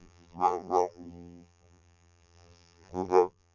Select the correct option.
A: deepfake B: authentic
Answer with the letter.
A